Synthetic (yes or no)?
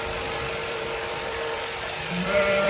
yes